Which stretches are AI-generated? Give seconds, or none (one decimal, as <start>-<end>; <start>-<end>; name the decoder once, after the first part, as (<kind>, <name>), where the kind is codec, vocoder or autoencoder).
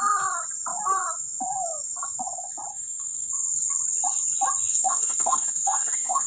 2.7-3.3 (codec, SNAC); 4.7-6.3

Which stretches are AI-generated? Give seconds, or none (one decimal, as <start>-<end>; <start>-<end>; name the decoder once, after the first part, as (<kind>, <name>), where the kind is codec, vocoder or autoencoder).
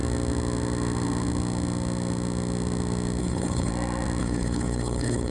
3.2-3.7 (codec, HILCodec); 4.2-5.3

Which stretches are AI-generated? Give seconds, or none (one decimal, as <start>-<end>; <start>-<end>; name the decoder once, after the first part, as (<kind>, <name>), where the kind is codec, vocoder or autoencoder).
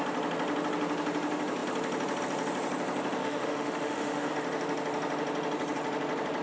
3.2-4.3 (autoencoder, DAC-VAE)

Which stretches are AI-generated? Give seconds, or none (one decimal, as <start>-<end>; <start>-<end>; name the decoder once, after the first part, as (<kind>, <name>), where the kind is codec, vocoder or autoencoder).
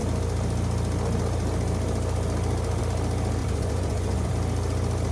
3.4-4.3 (vocoder, Vocos)